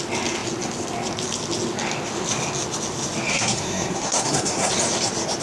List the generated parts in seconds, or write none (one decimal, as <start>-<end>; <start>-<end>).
3.3-4.7